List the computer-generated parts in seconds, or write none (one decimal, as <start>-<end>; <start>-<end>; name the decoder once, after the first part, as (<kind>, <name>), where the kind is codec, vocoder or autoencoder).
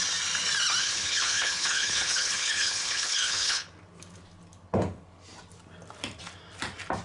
0.8-3.7 (codec, HILCodec)